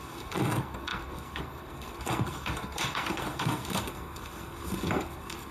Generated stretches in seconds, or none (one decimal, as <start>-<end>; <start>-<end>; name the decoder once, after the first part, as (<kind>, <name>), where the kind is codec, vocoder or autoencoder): 0.0-5.5 (codec, SNAC)